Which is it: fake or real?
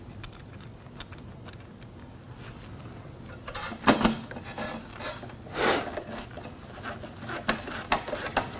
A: real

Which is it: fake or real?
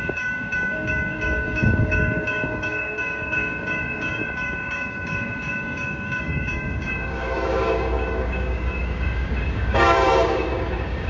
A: fake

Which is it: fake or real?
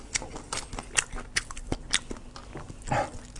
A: real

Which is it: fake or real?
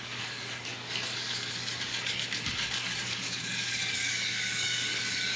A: fake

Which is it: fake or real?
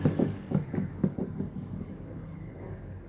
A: fake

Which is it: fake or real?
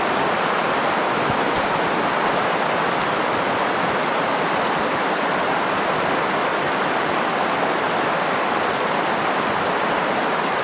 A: real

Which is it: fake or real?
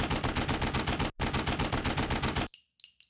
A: real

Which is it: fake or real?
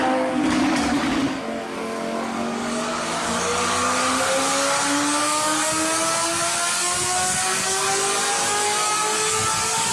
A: fake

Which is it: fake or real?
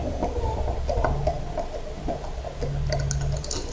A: real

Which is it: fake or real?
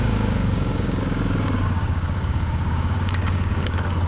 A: fake